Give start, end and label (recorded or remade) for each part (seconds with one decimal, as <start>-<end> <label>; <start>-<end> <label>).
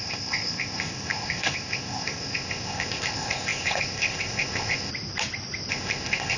0.0-4.9 remade; 4.9-5.7 recorded; 5.7-6.4 remade